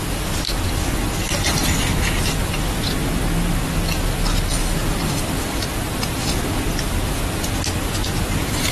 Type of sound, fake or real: real